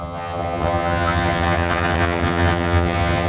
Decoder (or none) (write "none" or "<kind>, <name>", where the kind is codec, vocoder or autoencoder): vocoder, HiFi-GAN